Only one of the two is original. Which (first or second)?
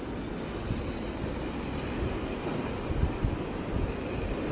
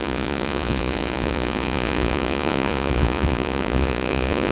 first